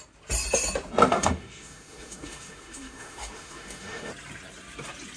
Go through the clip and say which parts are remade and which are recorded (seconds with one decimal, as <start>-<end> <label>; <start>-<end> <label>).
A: 0.0-1.1 recorded; 1.1-4.1 remade; 4.1-5.2 recorded